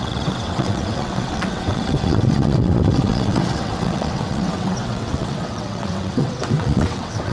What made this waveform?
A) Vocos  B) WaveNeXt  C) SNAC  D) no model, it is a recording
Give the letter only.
B